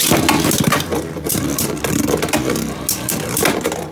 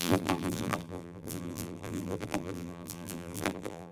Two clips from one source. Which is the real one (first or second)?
first